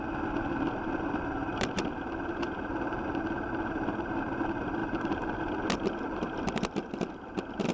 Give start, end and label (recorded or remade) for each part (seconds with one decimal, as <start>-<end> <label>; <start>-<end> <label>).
0.0-4.8 recorded; 4.8-5.4 remade; 5.4-7.7 recorded